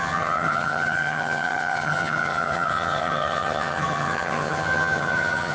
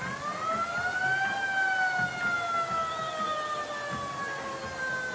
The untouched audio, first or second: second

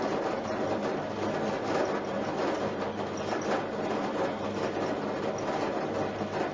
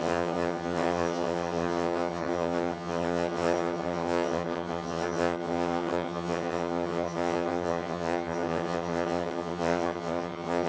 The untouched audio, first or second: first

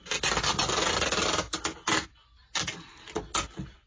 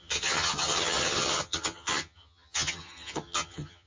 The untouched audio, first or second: first